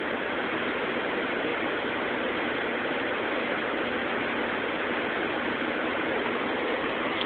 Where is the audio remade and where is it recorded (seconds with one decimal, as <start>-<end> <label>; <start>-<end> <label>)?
0.0-1.5 remade; 1.5-2.1 recorded; 2.1-4.0 remade; 4.0-5.2 recorded; 5.2-7.3 remade